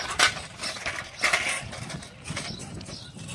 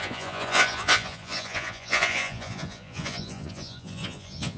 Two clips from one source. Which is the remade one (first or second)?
second